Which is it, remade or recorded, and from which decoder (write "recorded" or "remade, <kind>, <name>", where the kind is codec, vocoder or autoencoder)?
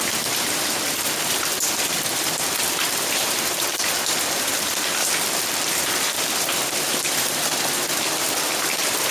remade, vocoder, BigVGAN v2